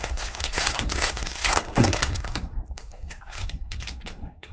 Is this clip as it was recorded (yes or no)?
no